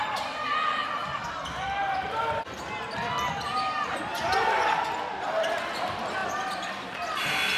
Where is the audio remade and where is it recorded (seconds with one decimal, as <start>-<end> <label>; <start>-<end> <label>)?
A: 0.0-7.6 recorded